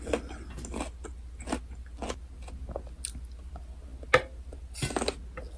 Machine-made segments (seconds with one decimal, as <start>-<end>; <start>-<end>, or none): none